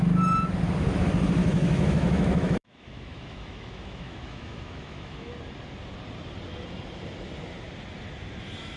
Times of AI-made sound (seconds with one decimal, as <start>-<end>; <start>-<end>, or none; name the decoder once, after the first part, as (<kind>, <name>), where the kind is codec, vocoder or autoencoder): 1.4-5.3 (autoencoder, DAC-VAE)